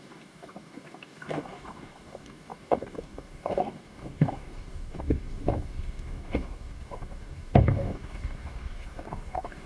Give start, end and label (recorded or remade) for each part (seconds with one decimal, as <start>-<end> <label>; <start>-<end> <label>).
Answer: 0.0-9.7 remade